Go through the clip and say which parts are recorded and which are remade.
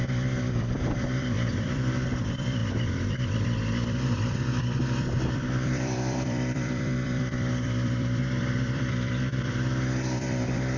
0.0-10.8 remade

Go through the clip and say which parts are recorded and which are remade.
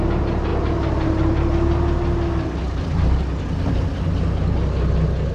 0.0-5.3 recorded